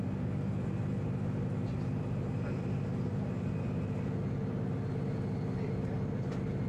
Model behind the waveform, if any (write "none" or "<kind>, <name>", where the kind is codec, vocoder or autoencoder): none